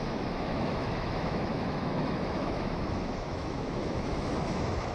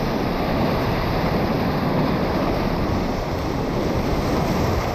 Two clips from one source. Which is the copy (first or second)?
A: first